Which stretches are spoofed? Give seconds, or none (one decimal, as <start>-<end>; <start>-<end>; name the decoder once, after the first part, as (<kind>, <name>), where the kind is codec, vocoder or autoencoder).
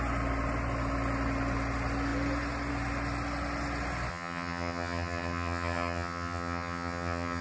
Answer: 4.1-7.4 (vocoder, HiFi-GAN)